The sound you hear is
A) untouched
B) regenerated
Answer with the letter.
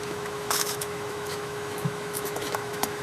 B